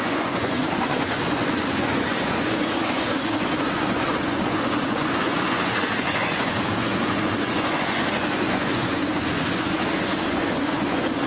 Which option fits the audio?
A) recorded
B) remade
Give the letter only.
B